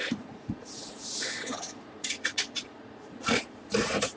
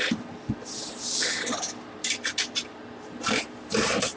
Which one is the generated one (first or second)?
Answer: first